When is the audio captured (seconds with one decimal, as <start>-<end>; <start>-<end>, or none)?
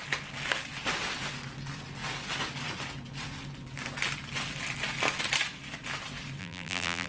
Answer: 0.0-6.4